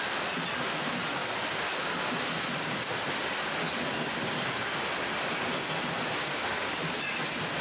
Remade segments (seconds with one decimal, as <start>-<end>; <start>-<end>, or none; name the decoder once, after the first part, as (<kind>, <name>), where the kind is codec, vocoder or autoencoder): 6.2-6.9 (codec, DAC)